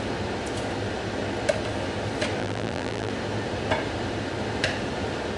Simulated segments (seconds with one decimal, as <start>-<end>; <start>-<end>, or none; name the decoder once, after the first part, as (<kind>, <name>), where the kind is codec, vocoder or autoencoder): 2.4-3.1 (vocoder, BigVGAN v2)